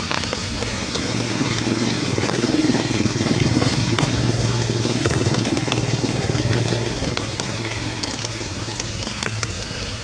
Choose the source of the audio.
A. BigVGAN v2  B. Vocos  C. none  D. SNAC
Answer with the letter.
D